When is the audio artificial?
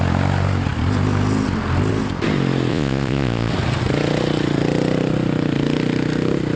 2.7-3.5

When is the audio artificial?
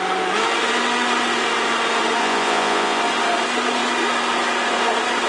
2.2-3.0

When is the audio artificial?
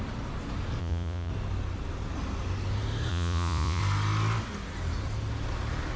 0.8-1.3; 3.1-3.8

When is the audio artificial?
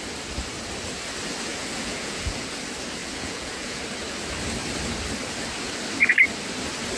1.5-2.6; 3.0-3.8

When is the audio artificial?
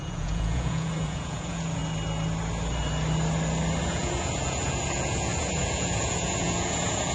0.0-1.8; 3.8-7.1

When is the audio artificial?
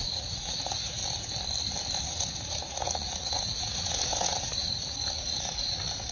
0.0-1.0; 2.0-6.1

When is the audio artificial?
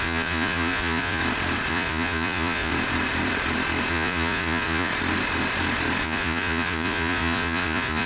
0.0-1.2; 1.7-2.7; 3.9-4.9; 6.0-8.1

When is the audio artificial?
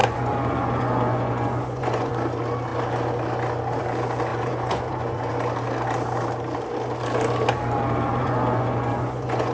0.0-2.1; 4.3-5.3; 8.2-9.5